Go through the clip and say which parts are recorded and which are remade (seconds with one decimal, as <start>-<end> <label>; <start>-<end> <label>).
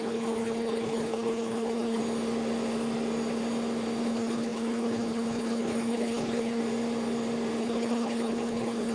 0.0-2.0 remade; 2.0-4.0 recorded; 4.0-6.6 remade; 6.6-7.6 recorded; 7.6-8.9 remade